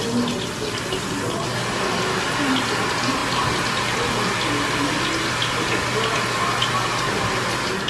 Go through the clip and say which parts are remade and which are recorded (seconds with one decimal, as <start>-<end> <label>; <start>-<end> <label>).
0.0-7.9 recorded